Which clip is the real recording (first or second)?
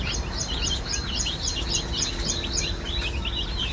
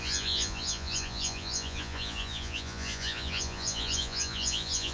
first